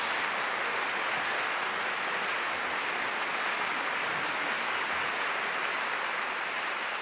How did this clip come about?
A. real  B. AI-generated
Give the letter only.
A